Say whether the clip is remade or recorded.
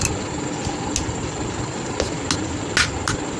recorded